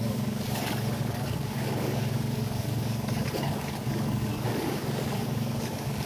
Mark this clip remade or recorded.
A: remade